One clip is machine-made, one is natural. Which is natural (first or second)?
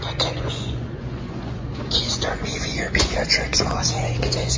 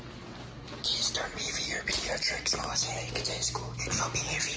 second